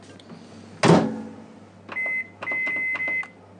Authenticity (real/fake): real